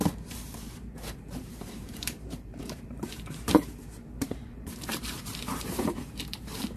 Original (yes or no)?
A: no